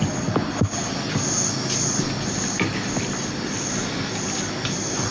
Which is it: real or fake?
real